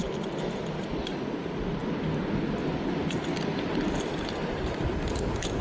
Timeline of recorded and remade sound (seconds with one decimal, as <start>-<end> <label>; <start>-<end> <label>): 0.0-5.6 recorded